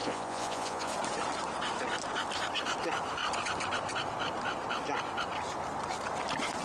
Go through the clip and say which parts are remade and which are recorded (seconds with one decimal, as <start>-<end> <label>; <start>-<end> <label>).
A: 0.0-0.9 remade; 0.9-6.6 recorded